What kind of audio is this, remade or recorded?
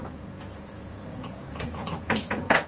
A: remade